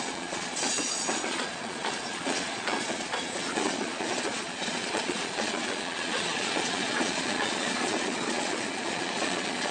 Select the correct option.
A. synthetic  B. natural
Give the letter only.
A